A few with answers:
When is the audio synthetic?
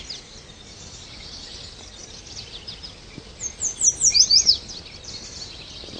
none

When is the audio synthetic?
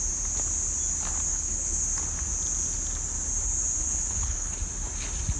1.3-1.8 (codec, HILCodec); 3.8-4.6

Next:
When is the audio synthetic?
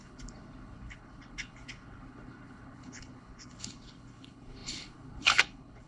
0.0-5.9 (codec, HILCodec)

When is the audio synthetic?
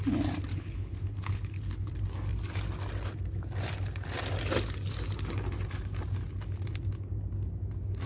0.5-1.9 (codec, HILCodec)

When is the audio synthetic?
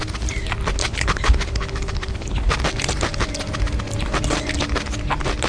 0.8-2.5 (codec, HILCodec)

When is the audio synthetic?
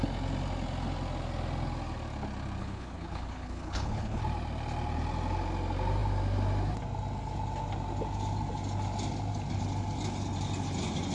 2.6-4.2 (codec, HILCodec)